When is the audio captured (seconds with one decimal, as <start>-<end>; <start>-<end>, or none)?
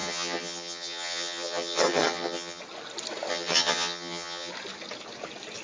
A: 2.6-3.3; 4.5-5.6